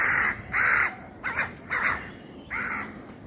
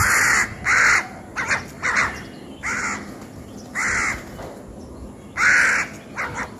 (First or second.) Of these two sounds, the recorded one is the second